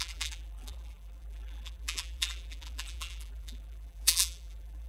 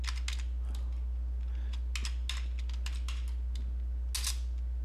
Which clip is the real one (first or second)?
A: second